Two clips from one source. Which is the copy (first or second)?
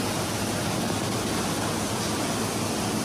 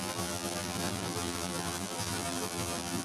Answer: second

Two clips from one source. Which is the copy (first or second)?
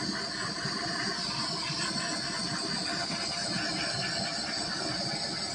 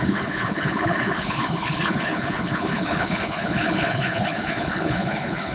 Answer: second